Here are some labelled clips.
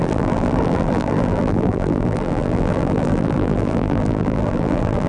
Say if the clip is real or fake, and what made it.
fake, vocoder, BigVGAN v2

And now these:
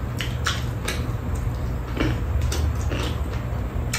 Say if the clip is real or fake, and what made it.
real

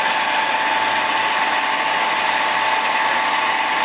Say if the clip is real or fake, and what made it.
real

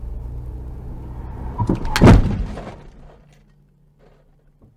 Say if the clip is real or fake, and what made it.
real